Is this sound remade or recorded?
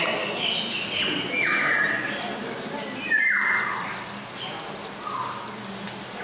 recorded